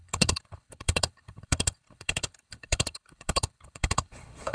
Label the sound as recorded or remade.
remade